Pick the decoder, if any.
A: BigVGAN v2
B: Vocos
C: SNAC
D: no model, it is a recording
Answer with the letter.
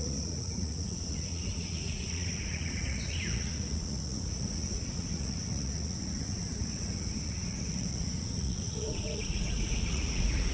B